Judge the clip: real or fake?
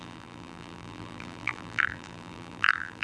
fake